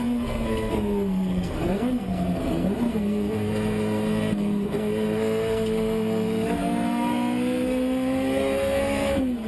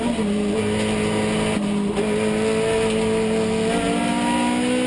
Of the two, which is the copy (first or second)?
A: first